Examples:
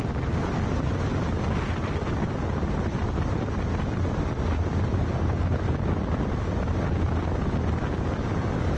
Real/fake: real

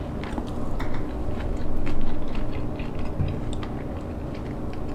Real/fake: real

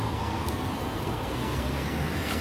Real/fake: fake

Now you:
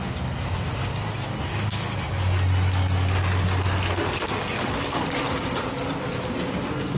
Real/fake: real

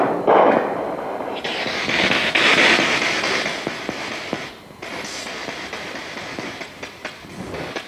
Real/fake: real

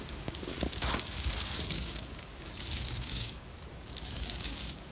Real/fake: fake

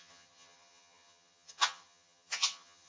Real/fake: fake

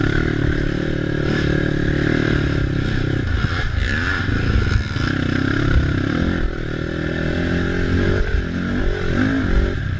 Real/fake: real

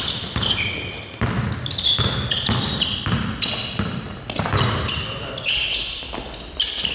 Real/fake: real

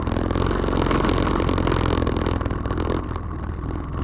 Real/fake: real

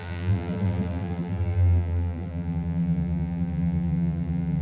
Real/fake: fake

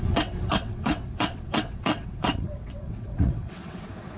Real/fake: fake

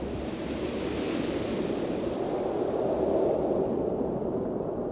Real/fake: real